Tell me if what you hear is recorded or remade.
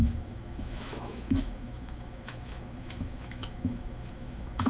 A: remade